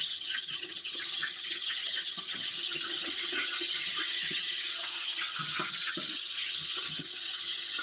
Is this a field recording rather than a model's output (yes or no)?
no